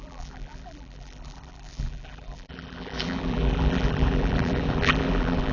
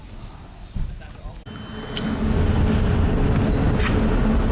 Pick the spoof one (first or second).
first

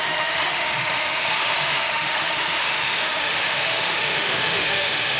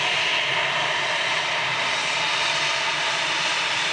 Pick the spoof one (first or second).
first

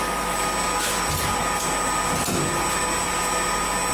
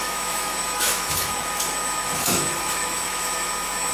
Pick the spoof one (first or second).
second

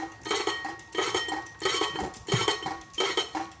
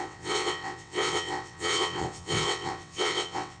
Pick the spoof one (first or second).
second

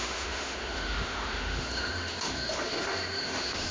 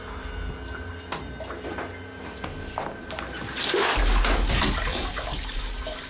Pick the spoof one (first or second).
first